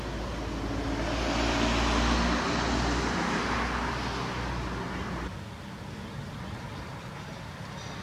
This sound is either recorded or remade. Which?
recorded